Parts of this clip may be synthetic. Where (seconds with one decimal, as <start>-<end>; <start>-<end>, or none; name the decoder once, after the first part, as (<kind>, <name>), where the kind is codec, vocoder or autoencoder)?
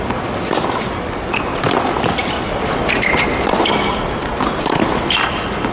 none